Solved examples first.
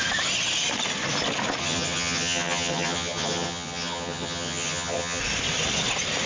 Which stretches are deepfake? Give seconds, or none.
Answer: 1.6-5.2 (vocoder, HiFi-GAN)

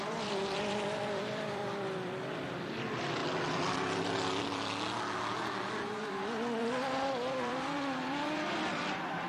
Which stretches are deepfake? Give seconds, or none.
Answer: 0.0-1.6 (vocoder, BigVGAN v2); 2.5-3.2; 6.6-9.3

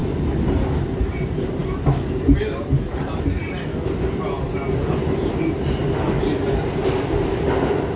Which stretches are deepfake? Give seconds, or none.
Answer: none

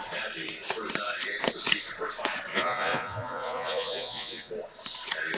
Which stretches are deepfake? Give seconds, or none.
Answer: 2.5-4.5 (vocoder, Vocos)

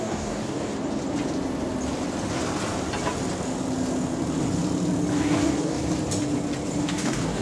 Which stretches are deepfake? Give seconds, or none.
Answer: 0.0-0.7 (codec, DAC); 5.1-5.8; 6.8-7.4

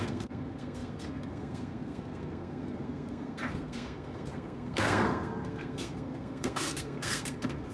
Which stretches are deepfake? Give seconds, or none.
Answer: 0.0-7.7 (codec, SNAC)

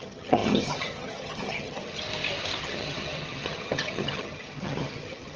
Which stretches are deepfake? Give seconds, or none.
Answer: 0.0-2.0 (vocoder, HiFi-GAN); 2.6-5.4